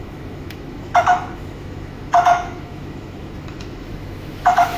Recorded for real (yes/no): no